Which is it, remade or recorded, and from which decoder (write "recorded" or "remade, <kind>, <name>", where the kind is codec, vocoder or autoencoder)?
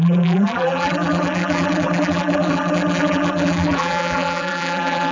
remade, vocoder, BigVGAN v2